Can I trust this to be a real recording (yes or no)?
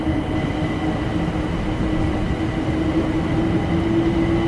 yes